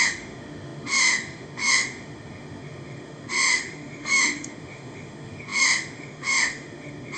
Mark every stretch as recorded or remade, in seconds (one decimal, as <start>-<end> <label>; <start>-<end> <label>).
0.0-7.2 remade